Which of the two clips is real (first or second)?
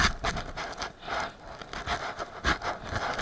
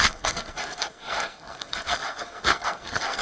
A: first